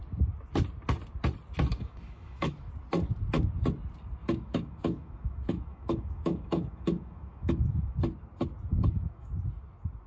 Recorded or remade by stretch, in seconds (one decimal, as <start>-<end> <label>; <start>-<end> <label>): 0.0-1.7 recorded; 1.7-2.7 remade; 2.7-4.2 recorded; 4.2-8.0 remade; 8.0-8.7 recorded; 8.7-9.3 remade; 9.3-10.1 recorded

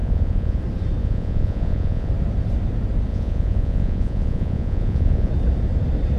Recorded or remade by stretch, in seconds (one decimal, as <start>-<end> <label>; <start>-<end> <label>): 0.0-0.6 remade; 0.6-1.0 recorded; 1.0-2.1 remade; 2.1-3.1 recorded; 3.1-5.3 remade; 5.3-6.2 recorded

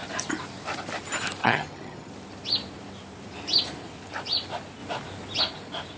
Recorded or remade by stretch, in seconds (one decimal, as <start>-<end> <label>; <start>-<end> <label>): 0.0-1.4 recorded; 1.4-2.1 remade; 2.1-6.0 recorded

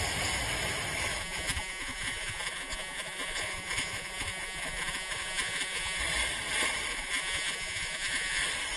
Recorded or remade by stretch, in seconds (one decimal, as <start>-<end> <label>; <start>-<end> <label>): 0.0-1.2 recorded; 1.2-6.0 remade; 6.0-6.9 recorded; 6.9-8.4 remade; 8.4-8.8 recorded